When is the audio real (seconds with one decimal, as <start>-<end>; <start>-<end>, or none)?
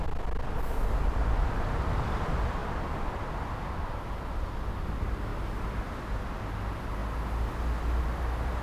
0.0-8.6